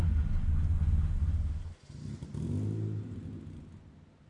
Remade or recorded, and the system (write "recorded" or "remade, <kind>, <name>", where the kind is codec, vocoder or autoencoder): recorded